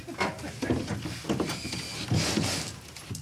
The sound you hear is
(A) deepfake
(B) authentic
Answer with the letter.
B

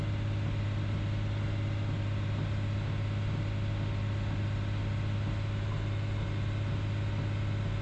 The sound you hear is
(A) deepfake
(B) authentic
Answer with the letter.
B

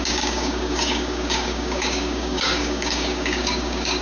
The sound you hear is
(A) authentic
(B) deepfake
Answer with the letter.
B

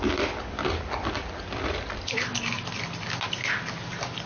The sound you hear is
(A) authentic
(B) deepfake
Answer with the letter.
A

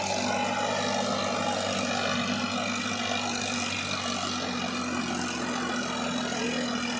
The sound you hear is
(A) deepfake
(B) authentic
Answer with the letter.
B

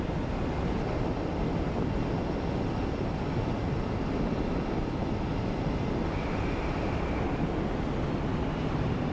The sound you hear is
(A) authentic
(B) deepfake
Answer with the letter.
A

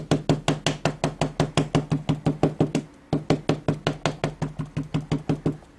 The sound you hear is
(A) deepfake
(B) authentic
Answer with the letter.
B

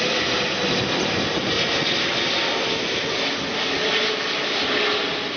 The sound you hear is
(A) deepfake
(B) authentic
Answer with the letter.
B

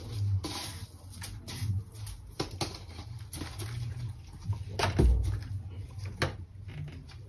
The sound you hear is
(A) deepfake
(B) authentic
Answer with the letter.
B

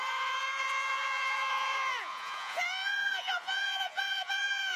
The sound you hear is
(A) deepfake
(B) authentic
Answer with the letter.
A